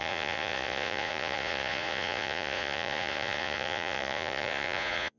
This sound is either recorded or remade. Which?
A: remade